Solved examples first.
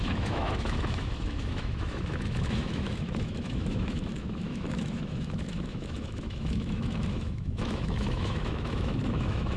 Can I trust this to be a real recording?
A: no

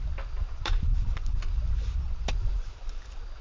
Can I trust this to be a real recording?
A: yes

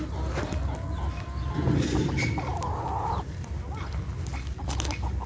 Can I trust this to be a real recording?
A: yes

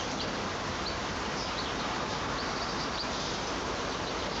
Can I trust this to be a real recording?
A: no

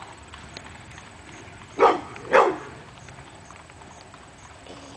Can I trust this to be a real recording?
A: no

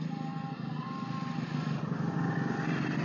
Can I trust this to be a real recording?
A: yes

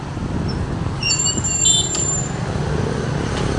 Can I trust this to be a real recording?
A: yes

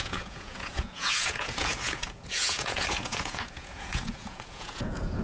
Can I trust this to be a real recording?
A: no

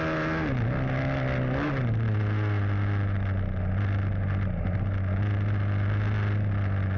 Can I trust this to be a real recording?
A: yes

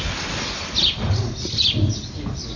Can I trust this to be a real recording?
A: yes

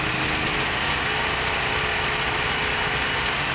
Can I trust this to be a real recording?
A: yes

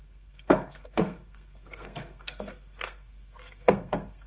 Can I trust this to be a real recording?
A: no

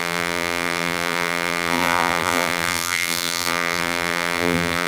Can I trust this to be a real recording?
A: no